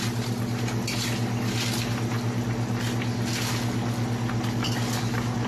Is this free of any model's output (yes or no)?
yes